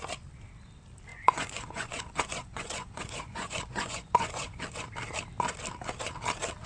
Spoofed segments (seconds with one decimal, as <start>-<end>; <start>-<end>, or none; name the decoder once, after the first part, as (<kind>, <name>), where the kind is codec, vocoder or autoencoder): 1.1-4.6 (vocoder, Vocos)